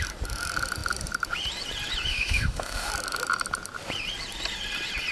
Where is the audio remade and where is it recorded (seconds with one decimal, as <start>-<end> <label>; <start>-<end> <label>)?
0.0-2.1 recorded; 2.1-2.9 remade; 2.9-5.1 recorded